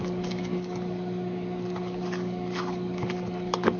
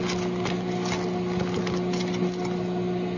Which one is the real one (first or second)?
second